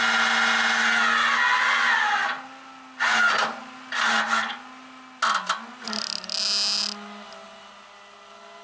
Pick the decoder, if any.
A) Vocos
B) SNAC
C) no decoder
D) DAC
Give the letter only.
C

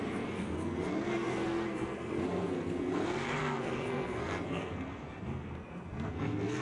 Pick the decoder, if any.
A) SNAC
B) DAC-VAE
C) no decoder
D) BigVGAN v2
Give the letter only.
A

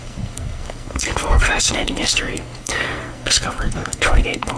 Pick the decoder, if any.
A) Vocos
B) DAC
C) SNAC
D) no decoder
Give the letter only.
C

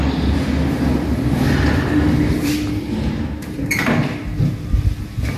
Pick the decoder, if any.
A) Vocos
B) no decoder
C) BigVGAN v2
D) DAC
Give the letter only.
C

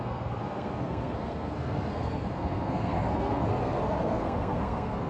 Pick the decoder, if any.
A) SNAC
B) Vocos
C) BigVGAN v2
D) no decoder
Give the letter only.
A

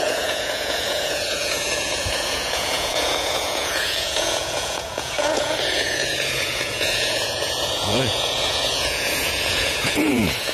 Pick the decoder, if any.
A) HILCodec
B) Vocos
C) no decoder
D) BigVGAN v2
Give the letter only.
B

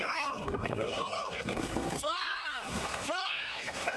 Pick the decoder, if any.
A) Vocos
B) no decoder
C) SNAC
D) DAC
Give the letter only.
C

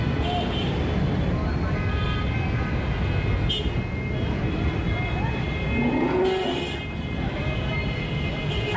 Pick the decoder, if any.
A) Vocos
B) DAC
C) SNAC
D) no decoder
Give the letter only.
D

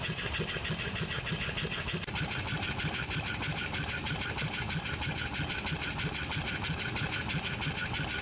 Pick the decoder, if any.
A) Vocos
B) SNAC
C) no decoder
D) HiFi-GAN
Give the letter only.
C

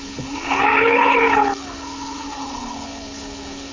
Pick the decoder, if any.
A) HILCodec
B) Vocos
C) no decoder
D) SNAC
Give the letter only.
A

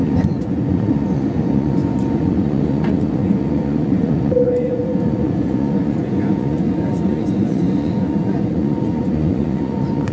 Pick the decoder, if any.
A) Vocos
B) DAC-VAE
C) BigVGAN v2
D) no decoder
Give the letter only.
A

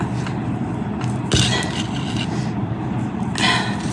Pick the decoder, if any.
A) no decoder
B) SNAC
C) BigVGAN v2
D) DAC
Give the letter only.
A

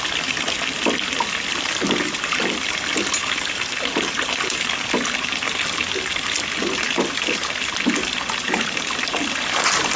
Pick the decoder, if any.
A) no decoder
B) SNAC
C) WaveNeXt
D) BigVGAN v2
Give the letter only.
A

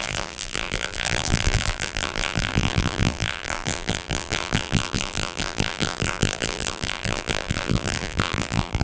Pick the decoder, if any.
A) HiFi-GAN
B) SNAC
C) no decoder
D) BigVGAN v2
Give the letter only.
D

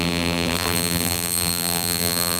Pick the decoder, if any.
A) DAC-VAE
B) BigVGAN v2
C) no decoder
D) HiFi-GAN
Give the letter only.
B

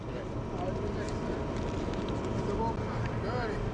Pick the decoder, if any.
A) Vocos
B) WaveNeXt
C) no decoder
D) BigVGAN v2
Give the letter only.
C